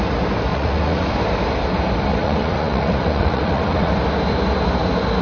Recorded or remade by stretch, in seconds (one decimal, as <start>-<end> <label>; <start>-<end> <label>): 0.0-0.5 recorded; 0.5-1.1 remade; 1.1-2.1 recorded; 2.1-3.9 remade; 3.9-5.2 recorded